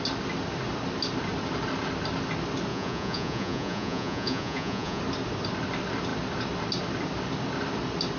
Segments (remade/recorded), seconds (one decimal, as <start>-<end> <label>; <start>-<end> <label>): 0.0-2.7 recorded; 2.7-5.0 remade; 5.0-8.2 recorded